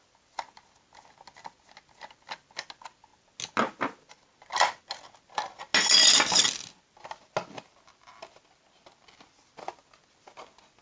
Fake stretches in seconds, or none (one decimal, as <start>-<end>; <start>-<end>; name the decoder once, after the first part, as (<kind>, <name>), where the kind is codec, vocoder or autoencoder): none